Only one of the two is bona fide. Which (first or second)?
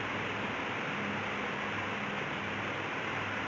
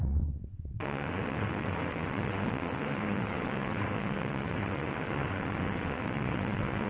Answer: first